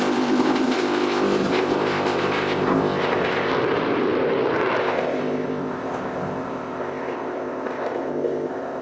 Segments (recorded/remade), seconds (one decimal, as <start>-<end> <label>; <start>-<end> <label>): 0.0-3.5 remade; 3.5-4.8 recorded; 4.8-8.8 remade